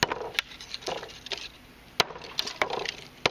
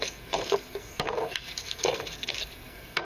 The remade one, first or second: second